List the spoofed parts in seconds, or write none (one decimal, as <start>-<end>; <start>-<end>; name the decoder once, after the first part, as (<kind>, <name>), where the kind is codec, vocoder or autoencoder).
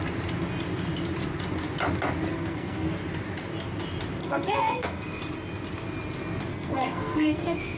2.3-2.9 (codec, SNAC); 4.2-5.2; 6.5-7.8